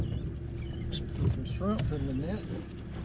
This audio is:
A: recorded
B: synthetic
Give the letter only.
A